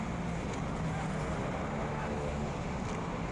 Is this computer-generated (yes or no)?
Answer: no